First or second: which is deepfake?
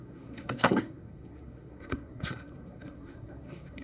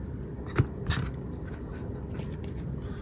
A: first